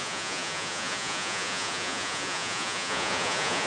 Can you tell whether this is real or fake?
fake